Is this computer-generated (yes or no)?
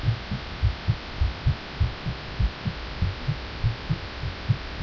no